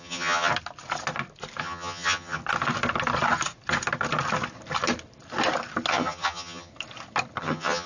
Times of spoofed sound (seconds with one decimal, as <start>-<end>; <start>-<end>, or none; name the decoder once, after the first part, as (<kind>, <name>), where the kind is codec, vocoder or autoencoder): 0.0-0.5 (vocoder, HiFi-GAN); 1.6-2.4; 5.9-6.7; 7.4-7.9